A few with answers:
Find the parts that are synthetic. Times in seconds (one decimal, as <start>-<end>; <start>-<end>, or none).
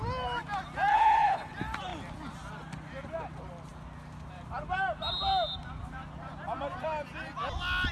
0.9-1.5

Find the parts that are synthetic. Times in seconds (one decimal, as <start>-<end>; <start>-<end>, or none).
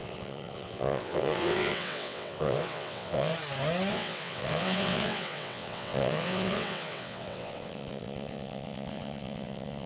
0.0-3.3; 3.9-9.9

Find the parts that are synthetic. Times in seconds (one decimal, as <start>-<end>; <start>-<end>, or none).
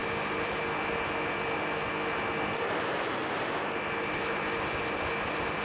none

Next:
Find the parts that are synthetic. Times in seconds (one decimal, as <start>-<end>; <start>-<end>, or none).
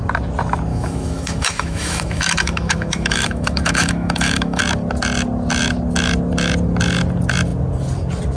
0.7-4.6